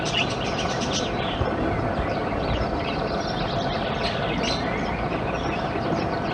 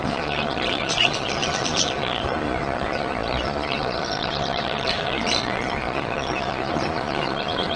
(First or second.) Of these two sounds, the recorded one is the first